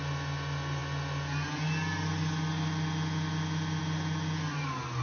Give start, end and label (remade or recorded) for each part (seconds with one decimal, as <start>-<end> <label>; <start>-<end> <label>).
0.0-5.0 recorded